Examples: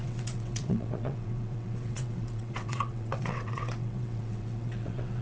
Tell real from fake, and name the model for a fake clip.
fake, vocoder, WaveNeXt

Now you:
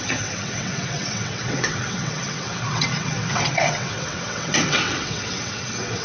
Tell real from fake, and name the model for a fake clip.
fake, vocoder, WaveNeXt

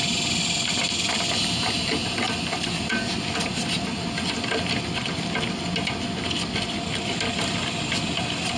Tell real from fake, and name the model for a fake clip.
real